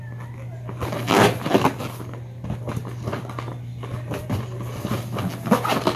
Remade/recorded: recorded